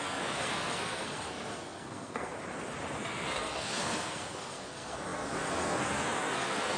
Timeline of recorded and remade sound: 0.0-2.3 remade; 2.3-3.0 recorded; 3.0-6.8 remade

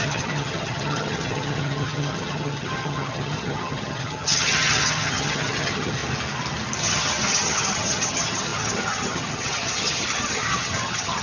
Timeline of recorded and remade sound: 0.0-6.0 remade; 6.0-6.8 recorded; 6.8-11.2 remade